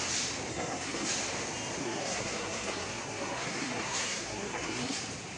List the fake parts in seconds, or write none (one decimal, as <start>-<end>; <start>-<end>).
0.5-1.1; 1.8-5.0